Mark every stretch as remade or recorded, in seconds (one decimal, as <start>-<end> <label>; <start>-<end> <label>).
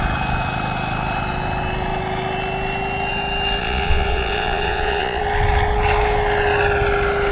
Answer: 0.0-3.6 recorded; 3.6-5.2 remade; 5.2-7.3 recorded